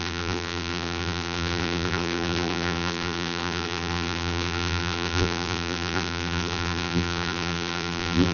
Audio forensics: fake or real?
fake